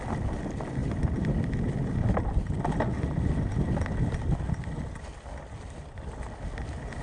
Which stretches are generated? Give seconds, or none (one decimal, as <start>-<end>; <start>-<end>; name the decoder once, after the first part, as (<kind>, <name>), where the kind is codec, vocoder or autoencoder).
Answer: none